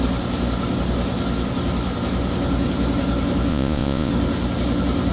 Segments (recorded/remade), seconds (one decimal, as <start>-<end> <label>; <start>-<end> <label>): 0.0-3.5 recorded; 3.5-4.1 remade; 4.1-5.1 recorded